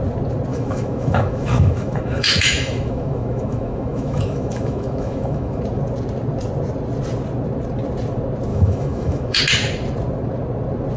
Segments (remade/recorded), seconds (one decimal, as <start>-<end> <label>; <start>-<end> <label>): 0.0-0.5 recorded; 0.5-5.6 remade; 5.6-8.5 recorded; 8.5-9.4 remade; 9.4-11.0 recorded